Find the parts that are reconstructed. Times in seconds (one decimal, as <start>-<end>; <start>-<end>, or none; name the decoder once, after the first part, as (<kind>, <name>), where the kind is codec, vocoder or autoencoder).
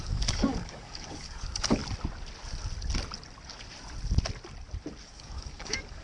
0.0-1.8 (codec, DAC); 5.0-6.0